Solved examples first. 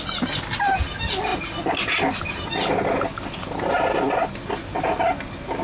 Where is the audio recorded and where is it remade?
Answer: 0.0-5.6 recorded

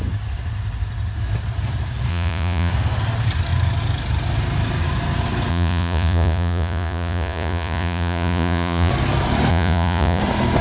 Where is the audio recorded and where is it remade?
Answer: 0.0-2.1 recorded; 2.1-2.7 remade; 2.7-5.5 recorded; 5.5-8.9 remade; 8.9-9.5 recorded; 9.5-10.2 remade; 10.2-10.6 recorded

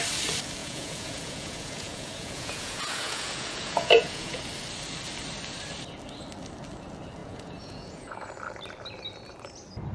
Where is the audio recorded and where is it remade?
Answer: 0.0-0.6 recorded; 0.6-4.4 remade; 4.4-7.2 recorded; 7.2-8.3 remade; 8.3-9.9 recorded

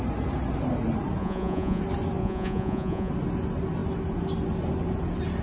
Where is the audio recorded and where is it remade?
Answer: 0.0-1.2 recorded; 1.2-1.8 remade; 1.8-2.2 recorded; 2.2-3.1 remade; 3.1-5.4 recorded

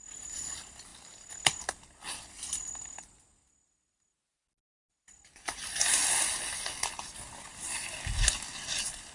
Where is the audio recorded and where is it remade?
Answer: 0.0-9.1 recorded

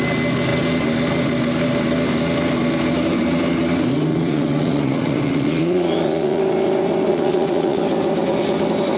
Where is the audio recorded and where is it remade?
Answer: 0.0-4.1 recorded; 4.1-6.4 remade; 6.4-7.1 recorded; 7.1-7.8 remade; 7.8-9.0 recorded